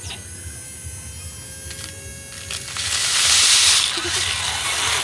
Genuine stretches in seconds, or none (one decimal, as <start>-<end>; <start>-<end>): 0.0-5.0